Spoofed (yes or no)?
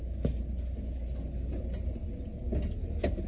no